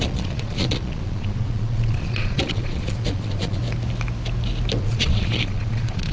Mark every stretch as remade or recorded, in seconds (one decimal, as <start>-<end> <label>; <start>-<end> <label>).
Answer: 0.0-3.6 remade; 3.6-4.8 recorded; 4.8-6.1 remade